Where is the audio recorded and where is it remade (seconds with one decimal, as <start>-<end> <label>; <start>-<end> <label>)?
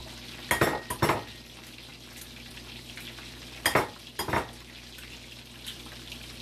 0.0-6.4 recorded